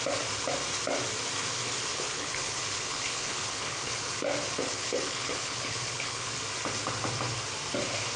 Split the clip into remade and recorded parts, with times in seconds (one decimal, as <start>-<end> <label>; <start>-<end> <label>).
0.0-1.9 recorded; 1.9-4.1 remade; 4.1-4.6 recorded; 4.6-6.3 remade; 6.3-8.2 recorded